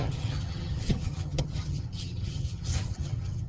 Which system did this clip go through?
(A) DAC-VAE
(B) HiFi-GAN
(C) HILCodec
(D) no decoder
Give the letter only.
B